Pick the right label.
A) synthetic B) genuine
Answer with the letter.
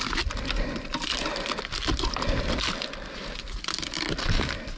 B